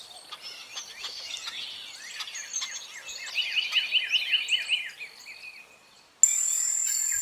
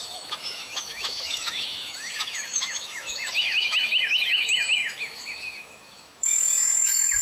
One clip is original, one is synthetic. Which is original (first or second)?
first